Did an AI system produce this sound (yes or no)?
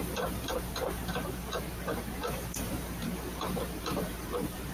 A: yes